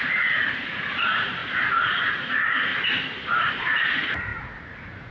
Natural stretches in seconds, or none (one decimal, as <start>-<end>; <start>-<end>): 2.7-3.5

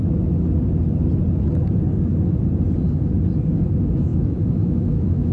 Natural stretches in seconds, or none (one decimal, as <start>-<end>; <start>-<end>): 0.0-4.1

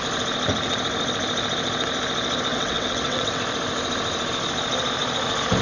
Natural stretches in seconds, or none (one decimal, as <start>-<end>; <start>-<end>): 0.0-2.5; 3.4-5.6

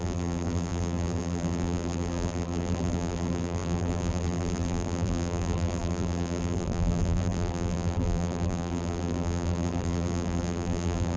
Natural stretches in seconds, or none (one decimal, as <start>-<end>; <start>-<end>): none